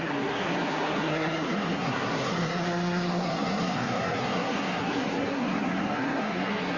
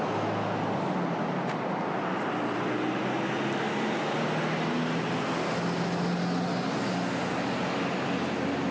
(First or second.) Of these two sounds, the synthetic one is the first